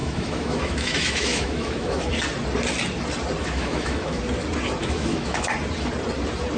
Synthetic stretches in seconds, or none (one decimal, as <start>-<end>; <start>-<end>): 0.0-2.1; 3.4-4.2; 4.8-5.5